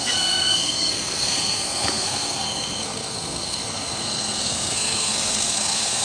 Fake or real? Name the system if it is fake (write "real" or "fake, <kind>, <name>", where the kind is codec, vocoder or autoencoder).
fake, codec, SNAC